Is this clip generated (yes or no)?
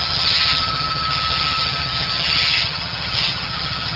yes